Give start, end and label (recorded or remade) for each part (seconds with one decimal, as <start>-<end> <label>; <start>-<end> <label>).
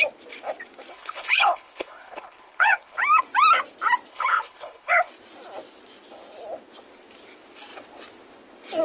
0.0-0.9 recorded; 0.9-3.0 remade; 3.0-4.1 recorded; 4.1-5.1 remade; 5.1-8.8 recorded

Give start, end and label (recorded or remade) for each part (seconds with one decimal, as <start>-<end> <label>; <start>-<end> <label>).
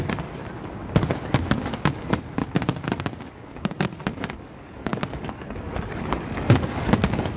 0.0-0.4 remade; 0.4-2.0 recorded; 2.0-2.4 remade; 2.4-3.3 recorded; 3.3-7.4 remade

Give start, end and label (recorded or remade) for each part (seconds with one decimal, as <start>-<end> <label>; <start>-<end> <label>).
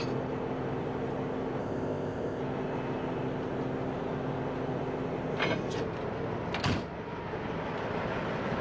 0.0-1.6 recorded; 1.6-2.4 remade; 2.4-8.6 recorded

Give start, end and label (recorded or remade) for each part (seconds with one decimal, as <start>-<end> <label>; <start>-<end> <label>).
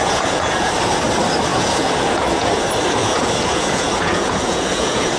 0.0-0.7 remade; 0.7-1.5 recorded; 1.5-2.5 remade; 2.5-3.0 recorded; 3.0-5.2 remade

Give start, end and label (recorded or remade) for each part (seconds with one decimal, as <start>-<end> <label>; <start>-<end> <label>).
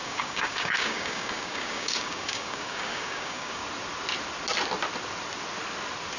0.0-3.6 remade; 3.6-6.2 recorded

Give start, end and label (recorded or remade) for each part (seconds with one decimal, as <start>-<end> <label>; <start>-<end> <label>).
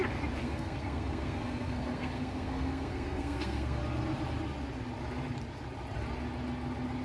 0.0-0.4 recorded; 0.4-3.8 remade; 3.8-7.0 recorded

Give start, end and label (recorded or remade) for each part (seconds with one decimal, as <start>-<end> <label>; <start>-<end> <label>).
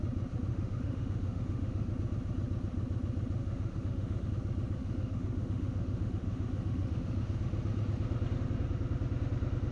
0.0-0.5 recorded; 0.5-1.9 remade; 1.9-3.4 recorded; 3.4-4.3 remade; 4.3-4.8 recorded; 4.8-7.4 remade; 7.4-9.7 recorded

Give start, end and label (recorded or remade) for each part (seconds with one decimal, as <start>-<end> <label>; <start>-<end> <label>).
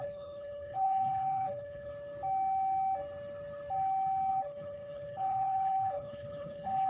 0.0-1.9 remade; 1.9-4.3 recorded; 4.3-6.9 remade